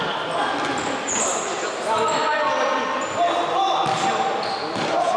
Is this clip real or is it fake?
real